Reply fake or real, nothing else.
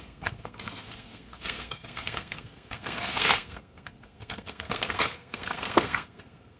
fake